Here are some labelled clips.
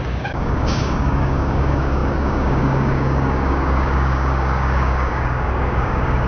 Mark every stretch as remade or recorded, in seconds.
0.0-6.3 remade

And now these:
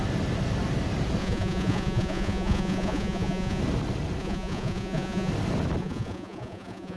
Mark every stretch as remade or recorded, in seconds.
0.0-1.2 recorded; 1.2-3.6 remade; 3.6-4.2 recorded; 4.2-5.3 remade; 5.3-5.8 recorded; 5.8-7.0 remade

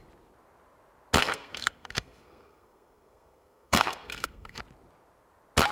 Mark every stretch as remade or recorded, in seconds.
0.0-1.2 recorded; 1.2-4.6 remade; 4.6-5.7 recorded

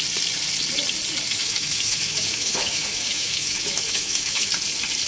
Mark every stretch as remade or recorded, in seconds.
0.0-1.4 recorded; 1.4-4.5 remade; 4.5-5.1 recorded

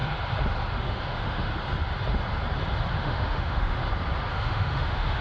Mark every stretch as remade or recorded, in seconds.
0.0-0.8 recorded; 0.8-1.5 remade; 1.5-3.0 recorded; 3.0-3.8 remade; 3.8-4.3 recorded; 4.3-5.2 remade

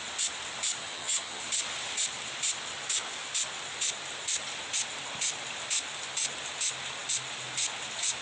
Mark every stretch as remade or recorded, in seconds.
0.0-0.8 recorded; 0.8-1.4 remade; 1.4-8.2 recorded